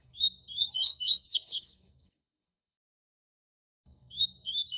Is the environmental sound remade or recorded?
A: remade